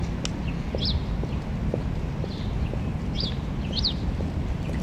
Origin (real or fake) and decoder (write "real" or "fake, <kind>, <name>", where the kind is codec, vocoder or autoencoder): real